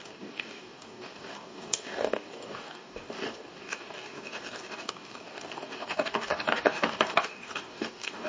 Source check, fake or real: fake